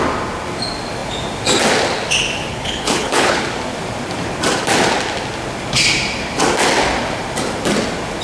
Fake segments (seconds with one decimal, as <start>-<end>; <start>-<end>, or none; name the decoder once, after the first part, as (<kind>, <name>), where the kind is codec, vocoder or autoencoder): 2.5-3.4 (codec, HILCodec)